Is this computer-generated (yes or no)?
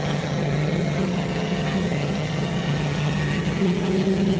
yes